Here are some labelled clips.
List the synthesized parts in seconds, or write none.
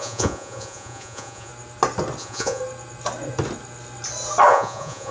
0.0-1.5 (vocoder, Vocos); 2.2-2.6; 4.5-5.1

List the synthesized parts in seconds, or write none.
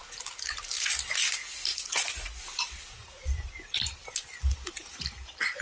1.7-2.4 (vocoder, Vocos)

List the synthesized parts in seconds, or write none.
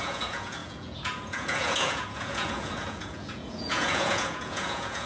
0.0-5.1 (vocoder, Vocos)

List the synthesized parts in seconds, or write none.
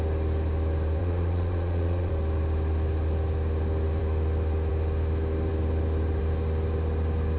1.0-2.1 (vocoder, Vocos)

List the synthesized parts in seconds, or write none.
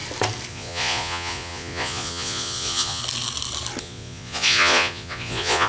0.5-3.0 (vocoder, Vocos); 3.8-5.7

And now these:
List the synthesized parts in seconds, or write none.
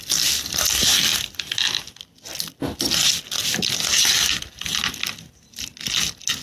none